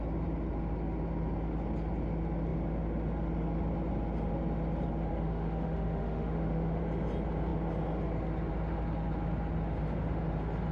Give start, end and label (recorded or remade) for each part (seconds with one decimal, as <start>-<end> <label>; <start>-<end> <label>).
0.0-5.1 recorded; 5.1-6.8 remade; 6.8-10.7 recorded